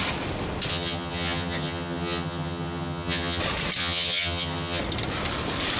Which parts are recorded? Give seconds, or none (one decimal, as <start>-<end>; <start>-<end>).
0.0-0.7; 3.4-3.8; 4.8-5.8